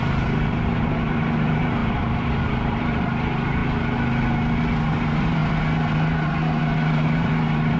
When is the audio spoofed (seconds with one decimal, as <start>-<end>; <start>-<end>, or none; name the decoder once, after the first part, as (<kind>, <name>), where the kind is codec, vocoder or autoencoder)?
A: 0.0-3.6 (vocoder, BigVGAN v2); 4.9-5.4; 6.6-7.8